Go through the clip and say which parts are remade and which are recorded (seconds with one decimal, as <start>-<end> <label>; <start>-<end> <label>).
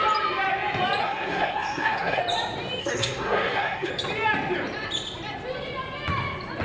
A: 0.0-1.0 recorded; 1.0-2.2 remade; 2.2-2.8 recorded; 2.8-3.9 remade; 3.9-6.6 recorded